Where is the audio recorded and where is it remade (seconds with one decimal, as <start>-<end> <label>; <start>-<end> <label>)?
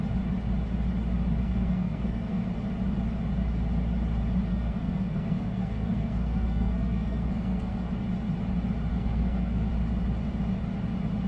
0.0-1.4 recorded; 1.4-2.5 remade; 2.5-4.5 recorded; 4.5-7.9 remade; 7.9-8.9 recorded; 8.9-9.7 remade; 9.7-11.3 recorded